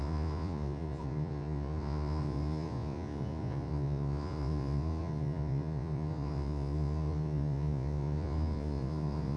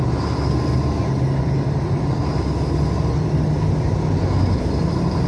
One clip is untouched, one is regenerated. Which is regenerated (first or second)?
first